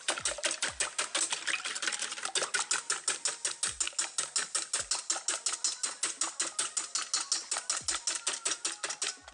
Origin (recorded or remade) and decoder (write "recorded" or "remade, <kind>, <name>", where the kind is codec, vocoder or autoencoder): recorded